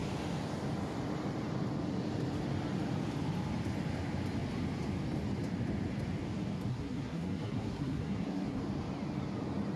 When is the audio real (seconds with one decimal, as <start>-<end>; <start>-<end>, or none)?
0.0-6.7; 8.6-9.8